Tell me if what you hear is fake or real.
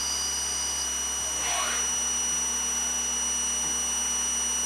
real